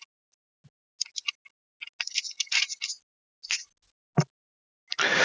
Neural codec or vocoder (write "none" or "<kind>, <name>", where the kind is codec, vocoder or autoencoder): none